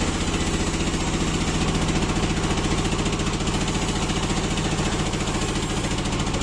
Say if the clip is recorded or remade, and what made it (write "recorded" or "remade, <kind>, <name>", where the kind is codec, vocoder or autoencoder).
recorded